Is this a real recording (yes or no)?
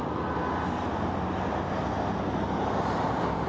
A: yes